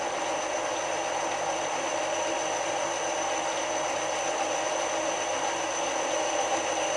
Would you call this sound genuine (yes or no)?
yes